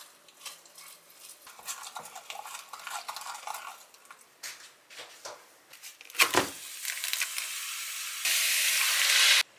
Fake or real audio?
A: real